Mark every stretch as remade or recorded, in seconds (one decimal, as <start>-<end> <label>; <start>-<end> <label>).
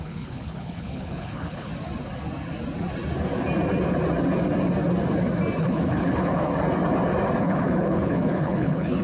0.0-1.7 remade; 1.7-5.6 recorded; 5.6-6.5 remade; 6.5-7.4 recorded; 7.4-9.0 remade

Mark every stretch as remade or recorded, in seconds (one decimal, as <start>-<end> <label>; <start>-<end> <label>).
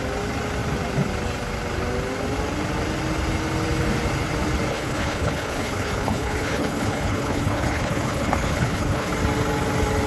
0.0-4.7 recorded; 4.7-9.1 remade; 9.1-10.1 recorded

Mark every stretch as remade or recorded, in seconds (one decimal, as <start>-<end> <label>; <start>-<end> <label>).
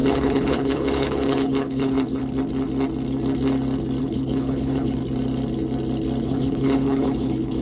0.0-2.2 remade; 2.2-4.0 recorded; 4.0-5.0 remade; 5.0-6.2 recorded; 6.2-7.6 remade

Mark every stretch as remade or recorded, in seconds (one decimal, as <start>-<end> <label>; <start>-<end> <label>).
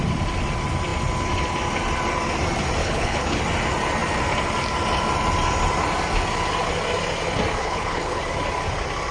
0.0-2.8 recorded; 2.8-3.4 remade; 3.4-7.6 recorded; 7.6-8.2 remade; 8.2-9.1 recorded